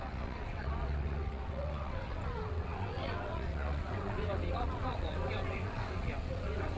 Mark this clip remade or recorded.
remade